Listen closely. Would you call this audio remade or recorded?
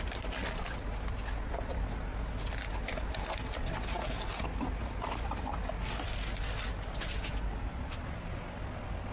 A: recorded